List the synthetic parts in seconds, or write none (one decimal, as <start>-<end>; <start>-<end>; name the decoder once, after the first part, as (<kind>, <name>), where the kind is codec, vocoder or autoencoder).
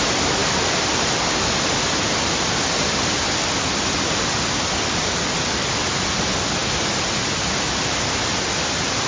none